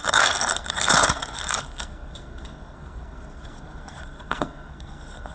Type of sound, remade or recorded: remade